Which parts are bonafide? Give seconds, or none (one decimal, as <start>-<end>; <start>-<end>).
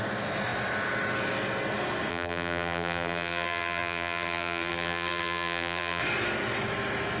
0.0-2.1; 6.0-7.2